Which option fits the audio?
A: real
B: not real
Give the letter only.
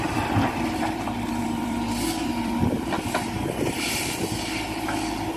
B